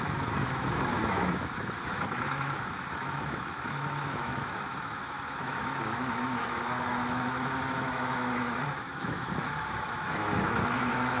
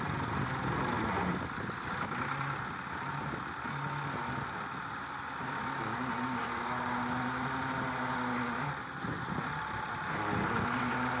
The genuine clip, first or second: second